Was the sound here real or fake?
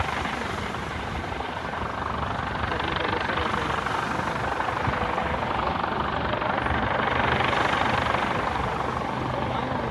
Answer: real